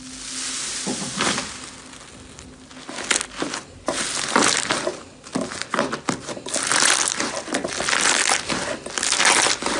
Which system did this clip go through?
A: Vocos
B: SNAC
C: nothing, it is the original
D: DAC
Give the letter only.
C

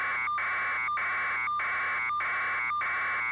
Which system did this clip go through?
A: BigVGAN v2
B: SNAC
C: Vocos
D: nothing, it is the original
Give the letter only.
D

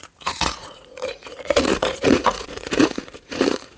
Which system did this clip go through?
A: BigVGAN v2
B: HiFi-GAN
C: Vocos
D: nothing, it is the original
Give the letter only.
C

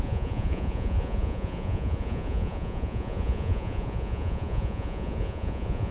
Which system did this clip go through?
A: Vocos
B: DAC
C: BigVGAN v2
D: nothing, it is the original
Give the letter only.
A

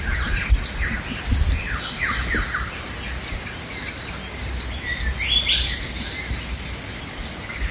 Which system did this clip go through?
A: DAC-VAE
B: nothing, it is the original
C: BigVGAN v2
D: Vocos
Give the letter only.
B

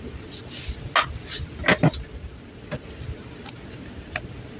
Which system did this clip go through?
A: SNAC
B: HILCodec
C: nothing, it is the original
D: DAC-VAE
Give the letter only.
C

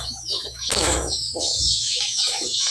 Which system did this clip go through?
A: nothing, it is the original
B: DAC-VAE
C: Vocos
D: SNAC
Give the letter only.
B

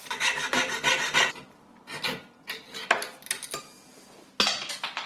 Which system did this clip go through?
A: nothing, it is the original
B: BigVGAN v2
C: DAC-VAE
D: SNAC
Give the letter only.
A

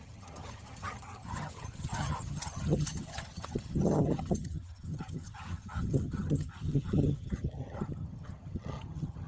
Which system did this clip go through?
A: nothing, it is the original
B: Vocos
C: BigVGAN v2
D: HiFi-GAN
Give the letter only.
D